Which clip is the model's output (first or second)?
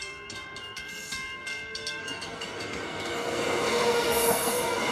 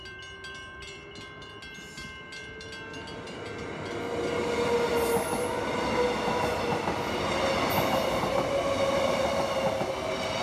first